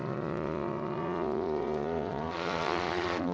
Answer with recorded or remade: remade